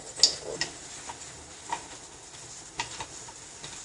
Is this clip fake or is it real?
real